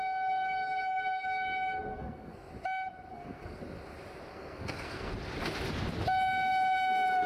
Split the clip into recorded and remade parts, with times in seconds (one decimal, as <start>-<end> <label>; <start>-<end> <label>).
0.0-1.9 recorded; 1.9-2.5 remade; 2.5-3.1 recorded; 3.1-3.6 remade; 3.6-4.3 recorded; 4.3-5.1 remade; 5.1-7.3 recorded